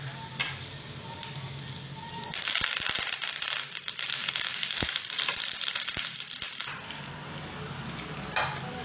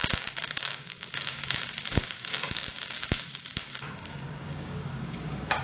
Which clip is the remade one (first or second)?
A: second